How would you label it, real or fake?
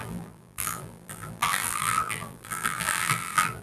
fake